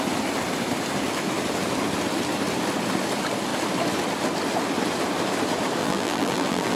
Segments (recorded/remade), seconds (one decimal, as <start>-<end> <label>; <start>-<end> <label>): 0.0-5.8 recorded; 5.8-6.8 remade